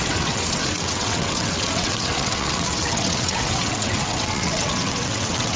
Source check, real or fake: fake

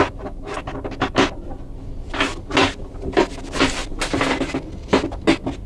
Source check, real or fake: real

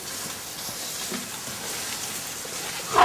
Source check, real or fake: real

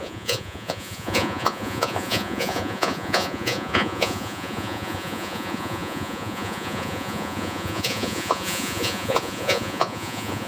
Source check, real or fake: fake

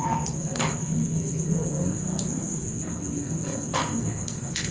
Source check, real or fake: fake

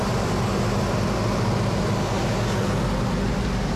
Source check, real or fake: real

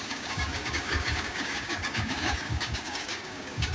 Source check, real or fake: fake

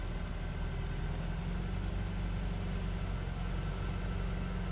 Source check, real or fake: real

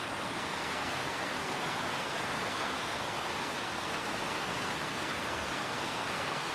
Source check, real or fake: fake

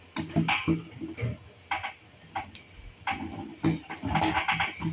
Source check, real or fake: real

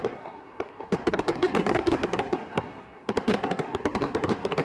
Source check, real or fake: fake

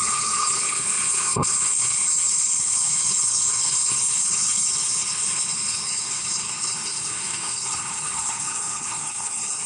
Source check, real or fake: fake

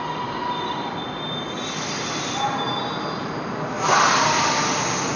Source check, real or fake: real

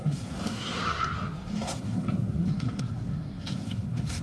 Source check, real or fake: fake